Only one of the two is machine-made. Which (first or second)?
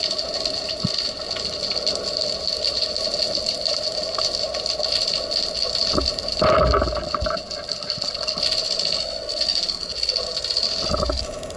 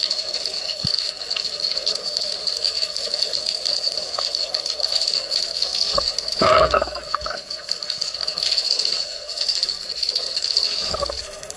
second